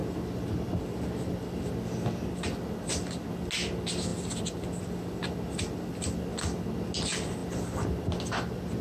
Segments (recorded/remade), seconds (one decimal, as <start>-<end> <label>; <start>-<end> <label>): 0.0-8.8 recorded